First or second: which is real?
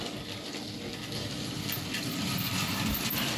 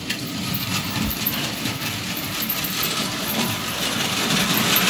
first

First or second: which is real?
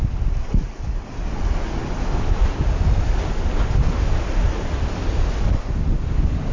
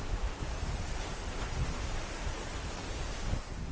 first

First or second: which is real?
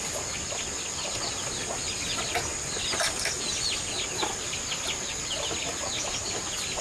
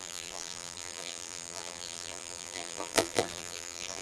first